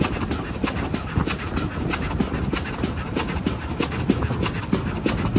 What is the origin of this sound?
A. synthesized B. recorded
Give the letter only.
B